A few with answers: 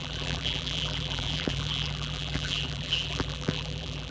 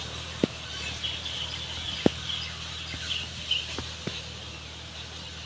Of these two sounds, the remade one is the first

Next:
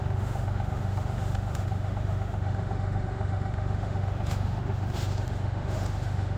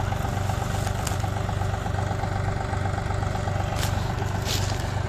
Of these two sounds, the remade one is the first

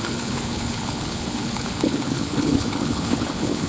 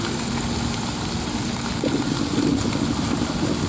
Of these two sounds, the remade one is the first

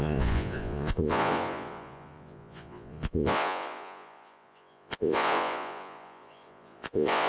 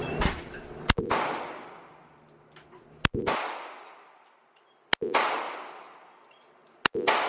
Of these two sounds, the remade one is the first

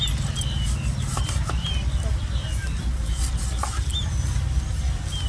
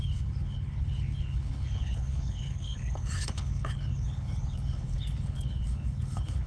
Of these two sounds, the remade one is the second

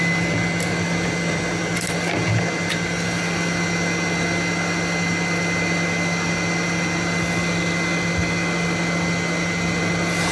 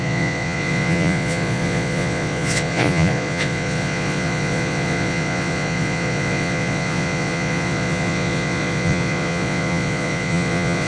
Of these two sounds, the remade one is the second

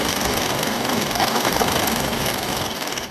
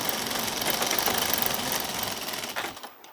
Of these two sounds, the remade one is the first